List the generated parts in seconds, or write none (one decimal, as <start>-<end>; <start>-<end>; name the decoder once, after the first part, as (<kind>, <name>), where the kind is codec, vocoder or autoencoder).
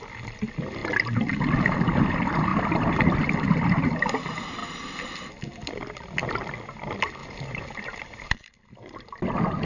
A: 2.5-3.4 (vocoder, BigVGAN v2); 7.2-8.3